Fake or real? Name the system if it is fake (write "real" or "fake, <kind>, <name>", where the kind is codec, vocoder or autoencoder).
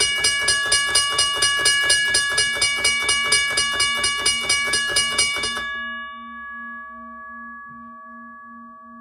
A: real